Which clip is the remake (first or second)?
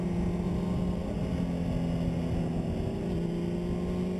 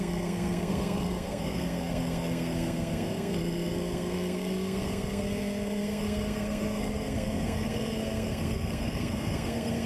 second